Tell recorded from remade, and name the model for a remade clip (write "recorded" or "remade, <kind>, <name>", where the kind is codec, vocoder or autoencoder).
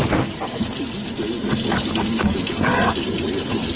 recorded